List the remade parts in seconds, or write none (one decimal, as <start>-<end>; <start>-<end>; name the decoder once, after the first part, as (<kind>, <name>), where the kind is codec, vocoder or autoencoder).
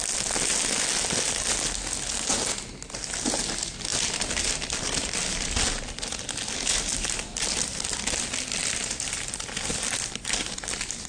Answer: none